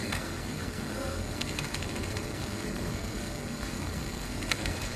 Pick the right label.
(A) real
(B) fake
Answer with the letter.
B